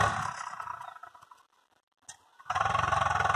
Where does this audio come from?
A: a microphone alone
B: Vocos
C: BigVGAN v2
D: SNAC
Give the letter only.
A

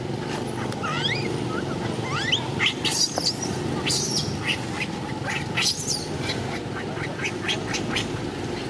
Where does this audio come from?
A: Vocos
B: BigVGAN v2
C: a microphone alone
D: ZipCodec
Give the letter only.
C